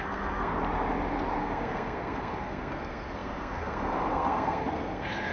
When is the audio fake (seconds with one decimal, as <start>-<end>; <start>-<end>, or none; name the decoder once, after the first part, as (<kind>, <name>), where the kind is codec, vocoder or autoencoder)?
0.0-0.5 (codec, SNAC); 1.4-5.3